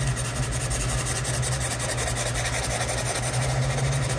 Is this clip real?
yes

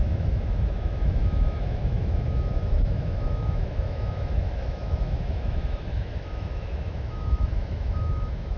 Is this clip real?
no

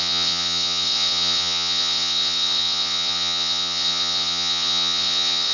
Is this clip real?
no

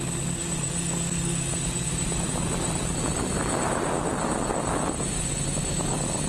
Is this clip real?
yes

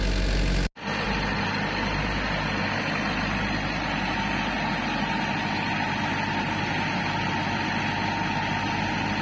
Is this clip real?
yes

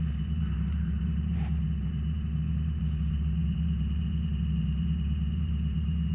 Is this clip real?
no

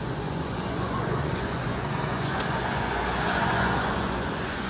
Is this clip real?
no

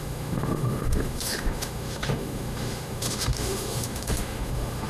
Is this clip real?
no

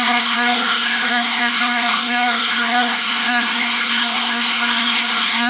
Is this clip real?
no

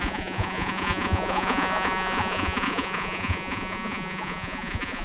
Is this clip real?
no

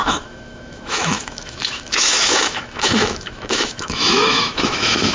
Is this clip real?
no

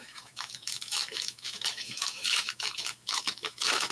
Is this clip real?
no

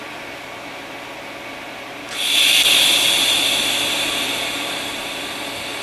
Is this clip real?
yes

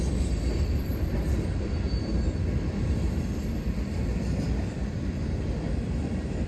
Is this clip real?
no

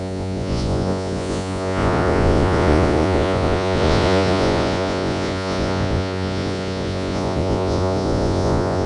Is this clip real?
no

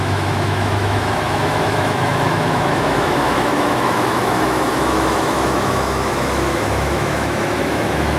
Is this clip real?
no